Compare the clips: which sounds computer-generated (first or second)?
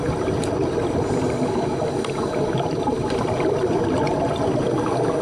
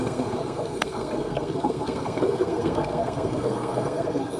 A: second